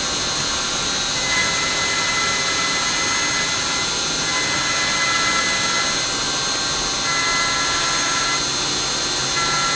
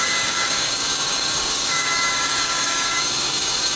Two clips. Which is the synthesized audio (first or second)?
second